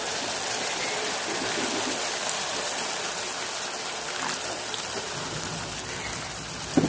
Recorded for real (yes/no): yes